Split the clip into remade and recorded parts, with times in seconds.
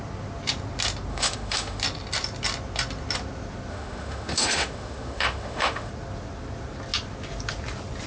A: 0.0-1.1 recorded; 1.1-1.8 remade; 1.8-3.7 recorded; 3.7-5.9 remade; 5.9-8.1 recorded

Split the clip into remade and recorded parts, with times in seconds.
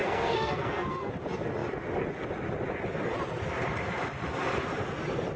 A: 0.0-1.1 remade; 1.1-5.4 recorded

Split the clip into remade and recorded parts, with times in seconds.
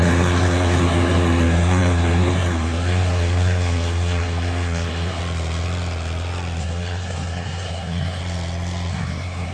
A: 0.0-5.2 remade; 5.2-6.6 recorded; 6.6-8.2 remade; 8.2-8.9 recorded; 8.9-9.5 remade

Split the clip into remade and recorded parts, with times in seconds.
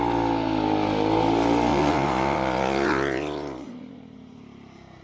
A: 0.0-1.7 recorded; 1.7-4.4 remade; 4.4-5.0 recorded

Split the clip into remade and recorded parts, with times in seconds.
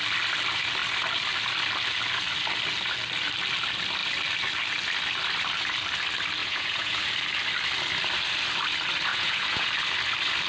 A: 0.0-6.4 recorded; 6.4-7.0 remade; 7.0-9.1 recorded; 9.1-9.7 remade; 9.7-10.5 recorded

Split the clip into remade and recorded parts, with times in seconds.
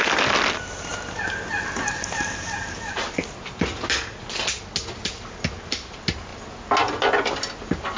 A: 0.0-8.0 recorded